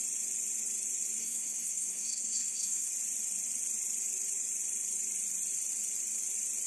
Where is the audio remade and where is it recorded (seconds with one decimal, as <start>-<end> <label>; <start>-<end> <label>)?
0.0-1.2 recorded; 1.2-2.9 remade; 2.9-6.7 recorded